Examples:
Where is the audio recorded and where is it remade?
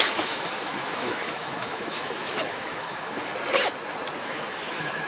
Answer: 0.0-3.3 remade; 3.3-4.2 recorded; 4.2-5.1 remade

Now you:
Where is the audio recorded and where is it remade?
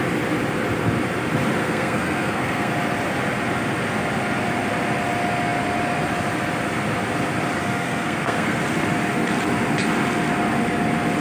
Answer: 0.0-1.6 recorded; 1.6-2.7 remade; 2.7-7.6 recorded; 7.6-8.6 remade; 8.6-11.2 recorded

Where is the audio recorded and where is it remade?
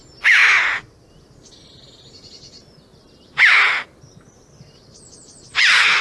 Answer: 0.0-6.0 recorded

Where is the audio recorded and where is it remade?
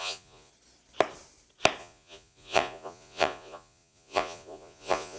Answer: 0.0-0.5 remade; 0.5-1.8 recorded; 1.8-5.2 remade